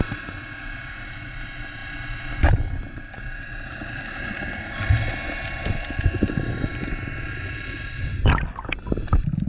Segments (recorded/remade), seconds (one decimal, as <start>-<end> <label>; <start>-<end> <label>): 0.0-9.5 recorded